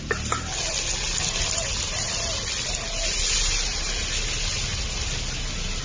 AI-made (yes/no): no